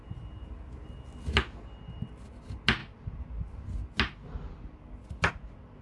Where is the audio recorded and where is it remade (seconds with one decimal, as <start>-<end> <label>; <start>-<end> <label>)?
0.0-5.8 recorded